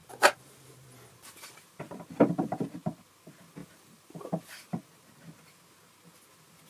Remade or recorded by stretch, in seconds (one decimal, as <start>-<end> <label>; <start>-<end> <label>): 0.0-2.7 remade; 2.7-3.6 recorded; 3.6-5.1 remade; 5.1-6.7 recorded